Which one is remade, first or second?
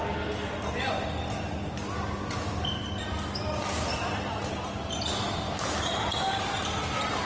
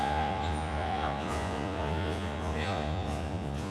second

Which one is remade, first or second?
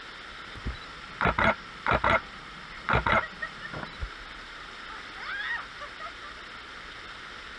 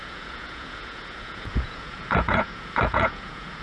second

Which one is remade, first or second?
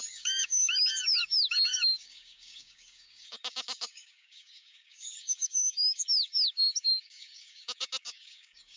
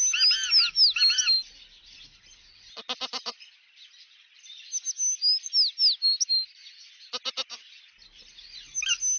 first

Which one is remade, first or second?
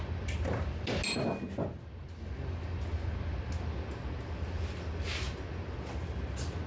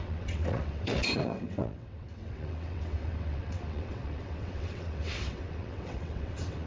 second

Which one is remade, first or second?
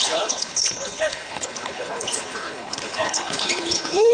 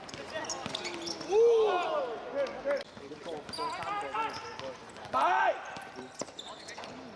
first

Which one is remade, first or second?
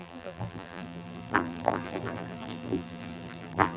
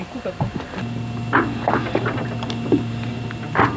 first